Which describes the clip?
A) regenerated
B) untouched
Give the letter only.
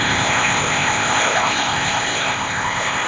A